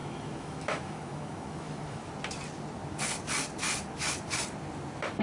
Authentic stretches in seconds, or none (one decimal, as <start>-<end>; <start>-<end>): 2.1-5.2